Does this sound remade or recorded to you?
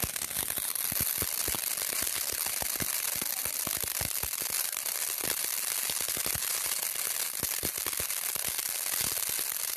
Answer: recorded